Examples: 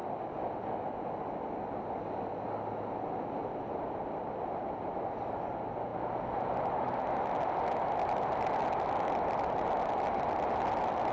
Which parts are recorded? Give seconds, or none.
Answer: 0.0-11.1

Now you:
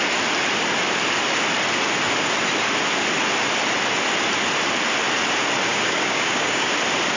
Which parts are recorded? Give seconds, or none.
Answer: 0.0-5.7; 6.7-7.2